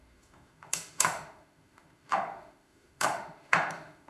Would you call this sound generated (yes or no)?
yes